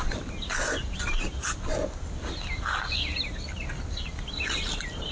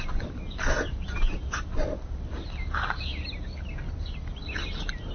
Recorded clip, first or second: second